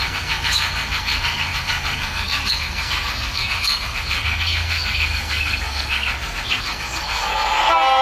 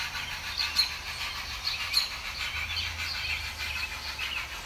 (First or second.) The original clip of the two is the second